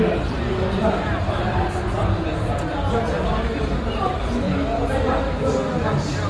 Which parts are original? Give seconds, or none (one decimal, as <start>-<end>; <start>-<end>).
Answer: 0.0-0.8; 1.7-6.3